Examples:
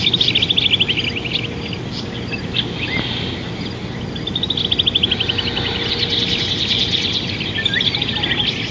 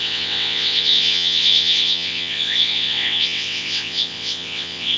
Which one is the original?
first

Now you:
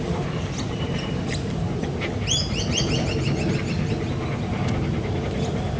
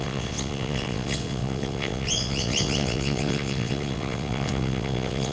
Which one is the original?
first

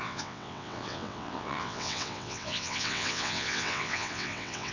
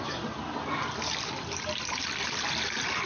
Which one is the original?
second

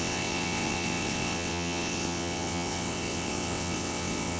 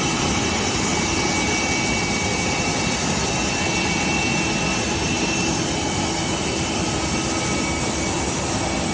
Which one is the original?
second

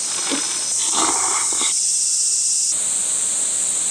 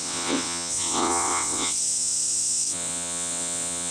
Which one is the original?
first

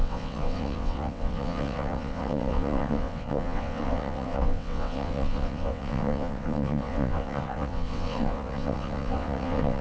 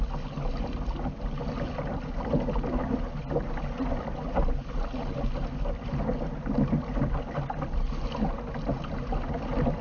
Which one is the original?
second